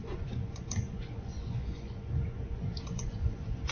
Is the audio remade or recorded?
remade